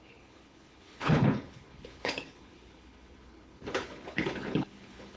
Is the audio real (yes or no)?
no